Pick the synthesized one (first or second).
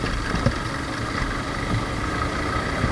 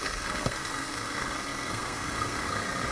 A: second